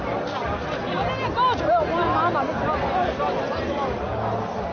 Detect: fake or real real